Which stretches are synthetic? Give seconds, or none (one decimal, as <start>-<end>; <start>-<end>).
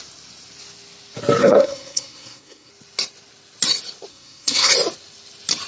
1.4-2.7; 4.1-4.7